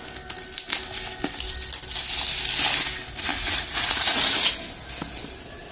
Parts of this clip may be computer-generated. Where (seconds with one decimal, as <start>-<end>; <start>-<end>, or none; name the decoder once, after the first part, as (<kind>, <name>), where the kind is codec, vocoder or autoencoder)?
3.3-4.4 (vocoder, Vocos)